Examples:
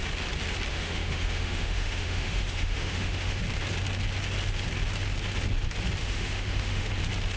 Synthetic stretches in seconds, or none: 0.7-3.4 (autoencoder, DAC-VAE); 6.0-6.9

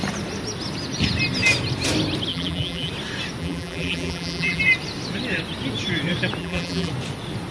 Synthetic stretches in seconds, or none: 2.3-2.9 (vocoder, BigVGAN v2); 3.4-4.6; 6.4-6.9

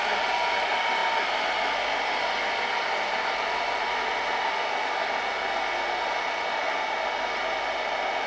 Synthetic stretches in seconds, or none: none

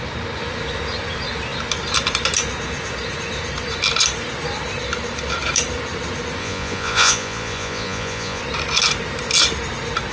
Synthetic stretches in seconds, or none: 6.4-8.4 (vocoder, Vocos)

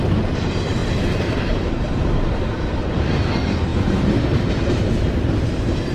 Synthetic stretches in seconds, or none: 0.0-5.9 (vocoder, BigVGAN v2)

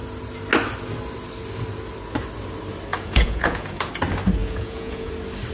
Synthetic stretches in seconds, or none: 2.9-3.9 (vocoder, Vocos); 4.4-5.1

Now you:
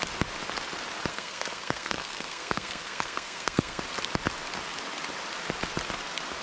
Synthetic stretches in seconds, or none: 1.1-3.8 (codec, SNAC)